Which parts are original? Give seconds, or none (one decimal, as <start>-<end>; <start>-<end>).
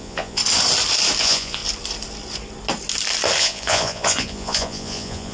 0.4-1.2; 1.6-3.4